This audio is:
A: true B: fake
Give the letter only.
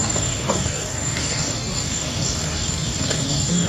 B